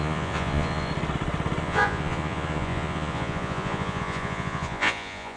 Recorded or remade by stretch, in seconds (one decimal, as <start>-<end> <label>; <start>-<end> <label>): 0.0-0.9 remade; 0.9-1.6 recorded; 1.6-5.4 remade